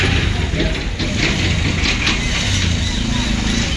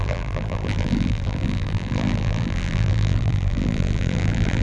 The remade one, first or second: second